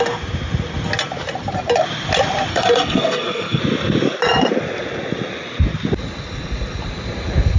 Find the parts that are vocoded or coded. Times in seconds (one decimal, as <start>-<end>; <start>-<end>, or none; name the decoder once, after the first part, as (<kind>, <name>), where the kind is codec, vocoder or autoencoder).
2.5-3.6 (codec, SNAC)